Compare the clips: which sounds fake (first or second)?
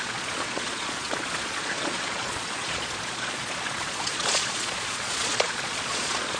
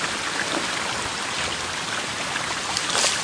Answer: first